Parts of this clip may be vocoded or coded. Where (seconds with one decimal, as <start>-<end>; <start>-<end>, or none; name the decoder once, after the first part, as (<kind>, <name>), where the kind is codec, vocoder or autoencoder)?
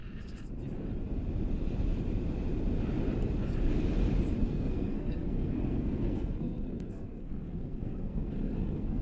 4.4-9.0 (codec, SNAC)